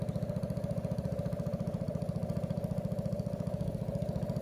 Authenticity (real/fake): real